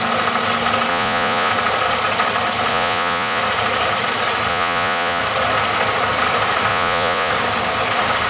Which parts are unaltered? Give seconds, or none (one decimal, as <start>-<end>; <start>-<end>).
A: 0.0-0.9; 1.5-2.7; 3.4-4.5; 5.2-6.7; 7.3-8.3